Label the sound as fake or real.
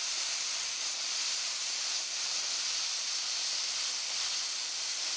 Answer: fake